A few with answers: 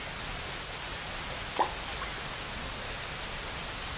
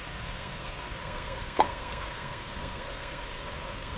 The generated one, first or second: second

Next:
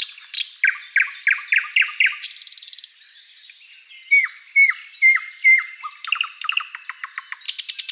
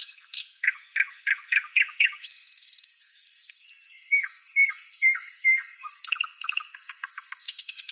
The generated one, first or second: second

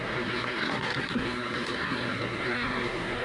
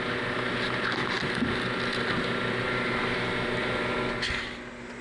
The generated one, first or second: first